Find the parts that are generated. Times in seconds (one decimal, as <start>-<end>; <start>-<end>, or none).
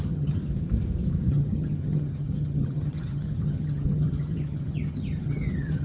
0.0-0.4; 1.3-5.8